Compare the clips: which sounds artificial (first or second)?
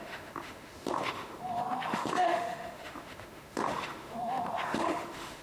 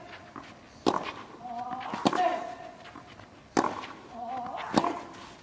first